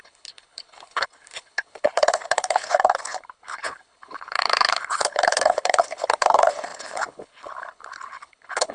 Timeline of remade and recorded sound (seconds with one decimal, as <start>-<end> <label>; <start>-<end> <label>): 0.0-8.7 remade